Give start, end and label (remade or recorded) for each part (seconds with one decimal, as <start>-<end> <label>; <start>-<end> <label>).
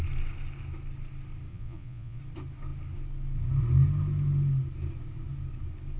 0.0-1.5 recorded; 1.5-2.2 remade; 2.2-6.0 recorded